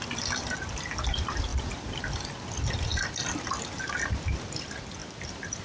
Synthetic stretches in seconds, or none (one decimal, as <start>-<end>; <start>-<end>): 1.5-2.2; 5.0-5.6